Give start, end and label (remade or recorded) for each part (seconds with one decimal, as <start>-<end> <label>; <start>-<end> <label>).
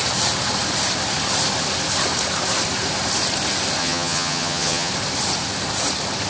0.0-3.8 recorded; 3.8-4.9 remade; 4.9-6.3 recorded